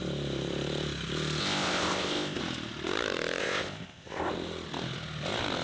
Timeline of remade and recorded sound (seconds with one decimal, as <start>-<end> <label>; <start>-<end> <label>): 0.0-1.4 recorded; 1.4-2.4 remade; 2.4-3.4 recorded; 3.4-4.3 remade; 4.3-5.6 recorded